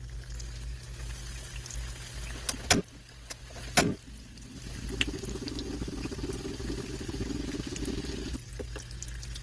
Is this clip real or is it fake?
real